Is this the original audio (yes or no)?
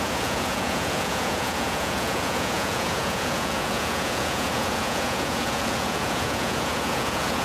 no